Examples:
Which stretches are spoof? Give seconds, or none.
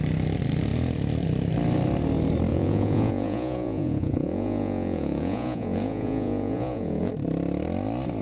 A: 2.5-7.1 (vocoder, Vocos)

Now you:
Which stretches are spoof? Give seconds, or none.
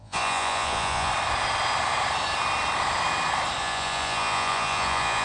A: 0.0-1.1 (vocoder, Vocos); 3.6-5.2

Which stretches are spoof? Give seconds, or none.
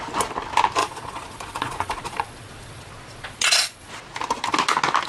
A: 0.8-3.9 (vocoder, Vocos)